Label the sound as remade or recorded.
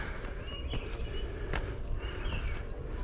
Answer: recorded